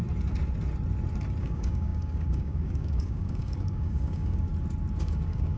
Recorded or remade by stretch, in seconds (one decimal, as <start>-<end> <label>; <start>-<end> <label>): 0.0-1.4 recorded; 1.4-4.5 remade; 4.5-5.0 recorded; 5.0-5.6 remade